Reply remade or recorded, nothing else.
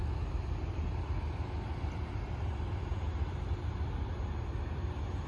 recorded